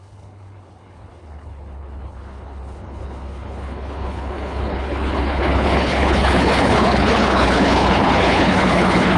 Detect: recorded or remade remade